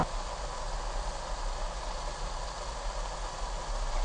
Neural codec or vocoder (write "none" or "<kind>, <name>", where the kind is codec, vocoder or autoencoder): none